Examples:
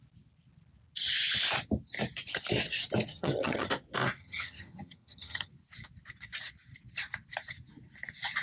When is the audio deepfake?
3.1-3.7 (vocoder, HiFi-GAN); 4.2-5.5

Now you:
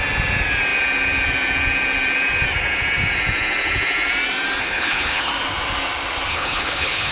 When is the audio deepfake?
4.6-5.3 (codec, HILCodec); 6.3-7.1

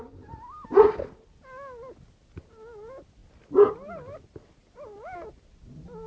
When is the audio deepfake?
none

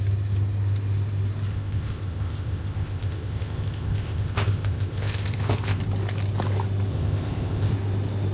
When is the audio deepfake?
1.5-5.8 (codec, ZipCodec); 6.9-7.7